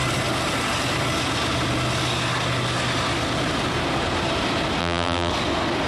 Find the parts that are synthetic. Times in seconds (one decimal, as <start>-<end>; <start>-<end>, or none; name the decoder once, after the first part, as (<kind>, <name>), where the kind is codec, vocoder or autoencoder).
4.8-5.3 (vocoder, BigVGAN v2)